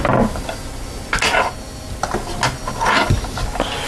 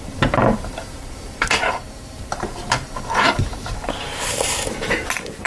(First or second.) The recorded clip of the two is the first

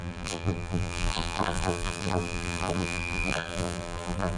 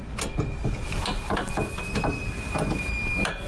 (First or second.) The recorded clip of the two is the second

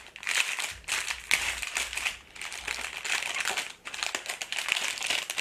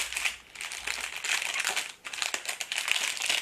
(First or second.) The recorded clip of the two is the second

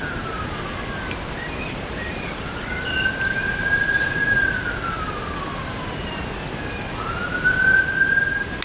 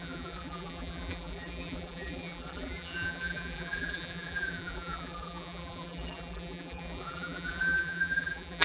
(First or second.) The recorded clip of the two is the first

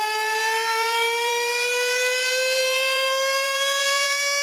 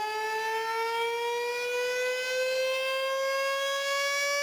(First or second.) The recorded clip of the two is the second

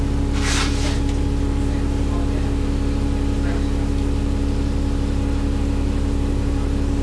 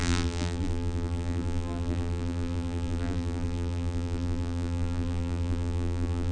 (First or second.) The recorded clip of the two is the first